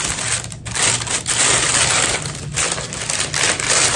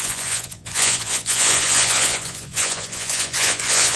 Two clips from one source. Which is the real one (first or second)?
first